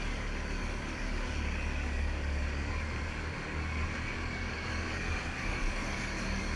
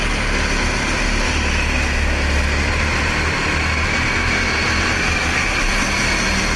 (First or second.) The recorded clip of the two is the second